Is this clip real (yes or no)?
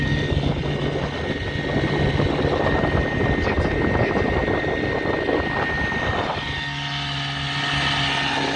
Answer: yes